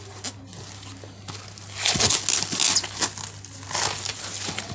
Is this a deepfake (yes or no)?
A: no